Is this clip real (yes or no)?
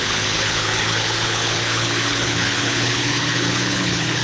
no